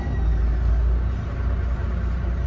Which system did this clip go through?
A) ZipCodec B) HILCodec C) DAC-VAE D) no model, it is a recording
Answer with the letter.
D